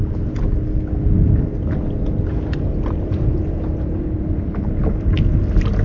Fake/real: real